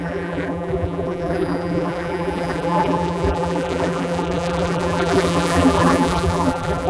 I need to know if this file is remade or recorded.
remade